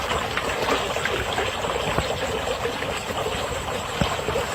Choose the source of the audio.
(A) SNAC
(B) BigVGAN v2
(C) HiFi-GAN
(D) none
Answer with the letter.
D